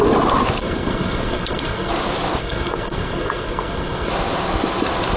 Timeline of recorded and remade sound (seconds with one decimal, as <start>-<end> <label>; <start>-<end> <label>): 0.0-0.6 recorded; 0.6-1.9 remade; 1.9-2.4 recorded; 2.4-4.1 remade; 4.1-5.2 recorded